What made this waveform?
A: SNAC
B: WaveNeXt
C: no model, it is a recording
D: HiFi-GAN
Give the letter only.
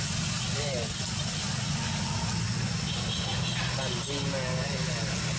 C